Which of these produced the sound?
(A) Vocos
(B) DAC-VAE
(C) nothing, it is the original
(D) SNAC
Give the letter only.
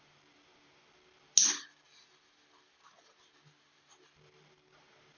C